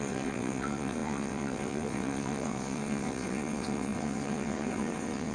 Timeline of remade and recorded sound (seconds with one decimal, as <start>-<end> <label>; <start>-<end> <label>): 0.0-5.3 remade